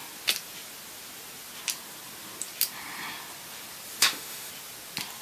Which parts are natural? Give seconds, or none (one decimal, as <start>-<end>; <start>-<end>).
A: 0.0-4.0; 4.5-5.2